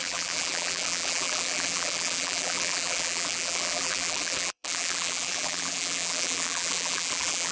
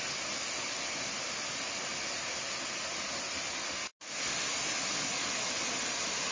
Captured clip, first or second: second